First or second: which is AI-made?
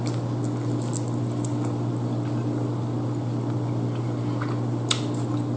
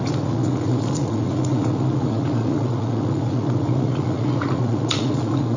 second